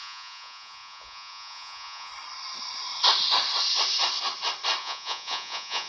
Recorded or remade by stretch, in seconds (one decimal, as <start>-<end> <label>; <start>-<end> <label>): 0.0-2.1 remade; 2.1-4.8 recorded; 4.8-5.9 remade